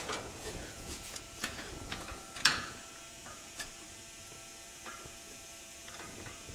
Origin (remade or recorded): remade